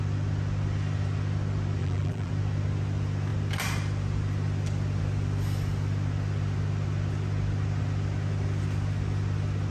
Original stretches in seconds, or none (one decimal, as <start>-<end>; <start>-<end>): 0.0-1.8; 2.3-9.7